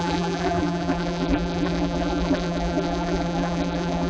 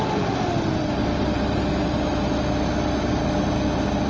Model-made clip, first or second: first